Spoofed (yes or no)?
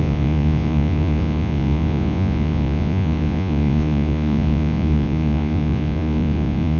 yes